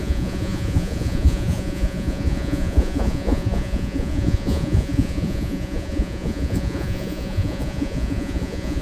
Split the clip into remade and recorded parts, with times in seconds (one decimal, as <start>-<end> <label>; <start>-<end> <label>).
0.0-8.8 remade